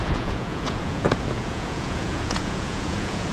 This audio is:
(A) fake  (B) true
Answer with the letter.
A